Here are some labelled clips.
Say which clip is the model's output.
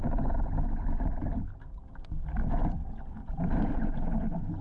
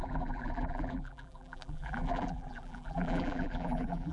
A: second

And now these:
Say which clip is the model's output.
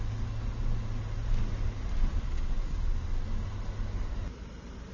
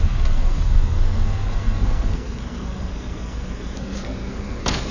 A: second